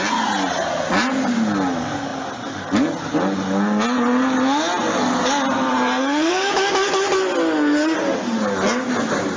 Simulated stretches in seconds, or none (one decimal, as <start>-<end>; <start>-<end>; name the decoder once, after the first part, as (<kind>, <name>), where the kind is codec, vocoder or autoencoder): none